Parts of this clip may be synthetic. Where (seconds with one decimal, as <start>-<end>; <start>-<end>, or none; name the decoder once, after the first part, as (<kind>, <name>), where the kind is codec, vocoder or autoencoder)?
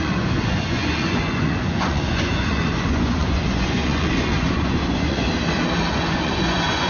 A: 0.0-5.2 (vocoder, Vocos); 5.9-6.9